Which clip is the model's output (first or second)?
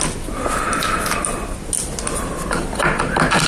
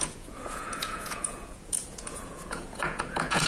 second